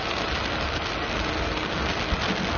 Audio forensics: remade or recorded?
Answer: recorded